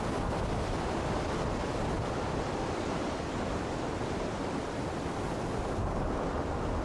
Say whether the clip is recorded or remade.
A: remade